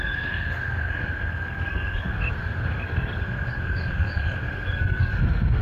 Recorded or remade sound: remade